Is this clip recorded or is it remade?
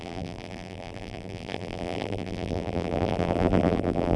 remade